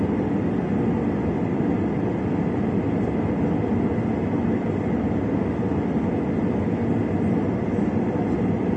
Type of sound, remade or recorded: recorded